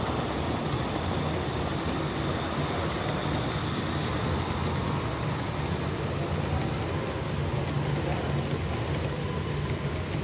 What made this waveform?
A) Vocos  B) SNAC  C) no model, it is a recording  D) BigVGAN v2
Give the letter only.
C